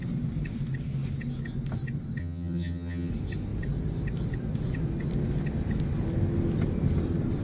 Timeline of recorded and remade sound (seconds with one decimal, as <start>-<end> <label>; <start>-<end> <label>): 0.0-2.2 recorded; 2.2-3.1 remade; 3.1-7.4 recorded